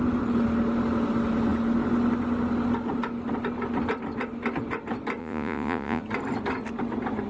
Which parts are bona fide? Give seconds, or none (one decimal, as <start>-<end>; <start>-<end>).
0.0-5.2; 6.0-7.3